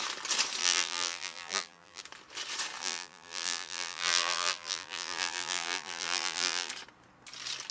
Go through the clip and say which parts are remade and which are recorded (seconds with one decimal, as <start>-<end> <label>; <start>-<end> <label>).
0.0-0.6 recorded; 0.6-2.0 remade; 2.0-2.8 recorded; 2.8-6.7 remade; 6.7-7.7 recorded